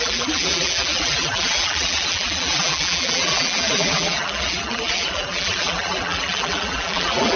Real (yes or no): no